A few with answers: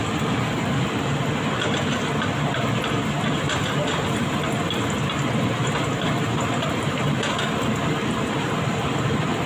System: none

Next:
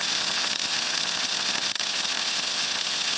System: vocoder, HiFi-GAN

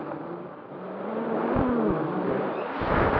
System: vocoder, BigVGAN v2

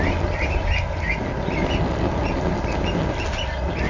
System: none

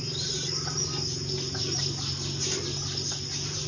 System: none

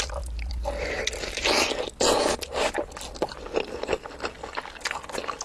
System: none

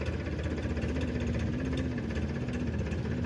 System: none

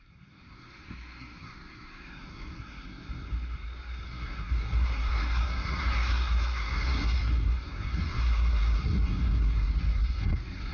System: codec, SNAC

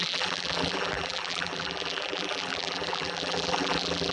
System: vocoder, BigVGAN v2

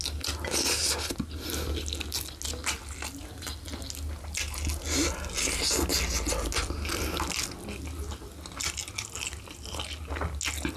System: none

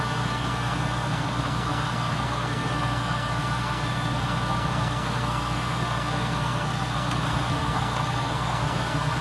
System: codec, SNAC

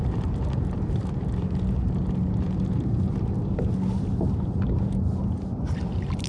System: none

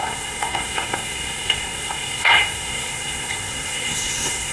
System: codec, SNAC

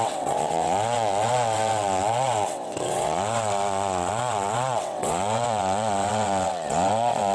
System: vocoder, WaveNeXt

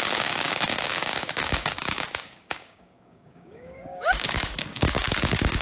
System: codec, DAC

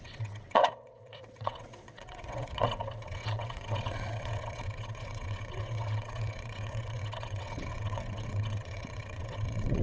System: vocoder, WaveNeXt